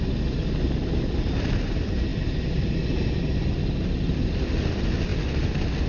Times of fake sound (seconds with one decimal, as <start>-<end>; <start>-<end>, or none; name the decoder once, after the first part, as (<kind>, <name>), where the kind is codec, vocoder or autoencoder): none